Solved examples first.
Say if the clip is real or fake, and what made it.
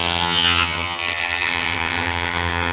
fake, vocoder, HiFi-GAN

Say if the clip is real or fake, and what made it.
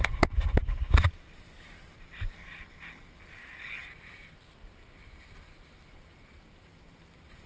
real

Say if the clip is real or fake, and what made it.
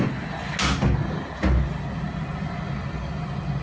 real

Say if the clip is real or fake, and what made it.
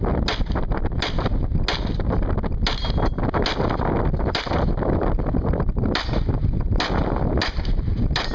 real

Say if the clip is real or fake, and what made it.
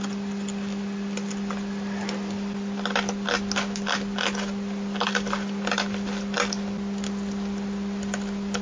real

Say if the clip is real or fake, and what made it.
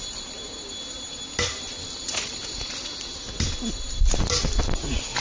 real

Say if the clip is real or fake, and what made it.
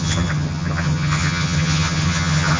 fake, vocoder, HiFi-GAN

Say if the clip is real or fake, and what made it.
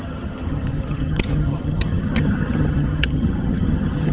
fake, vocoder, HiFi-GAN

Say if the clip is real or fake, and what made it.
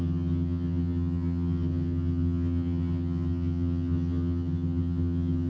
fake, vocoder, HiFi-GAN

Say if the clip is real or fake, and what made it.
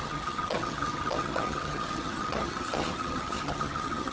fake, vocoder, HiFi-GAN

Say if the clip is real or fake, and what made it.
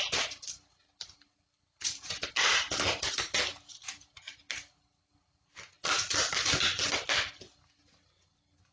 real